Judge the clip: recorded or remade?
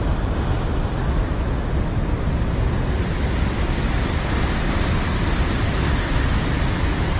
recorded